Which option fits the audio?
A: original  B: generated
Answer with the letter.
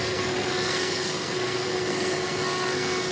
B